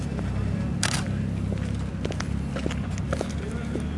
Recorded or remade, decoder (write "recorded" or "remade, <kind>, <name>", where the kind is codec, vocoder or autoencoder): recorded